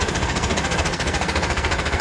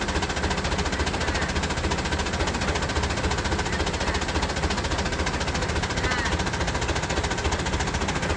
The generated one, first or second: first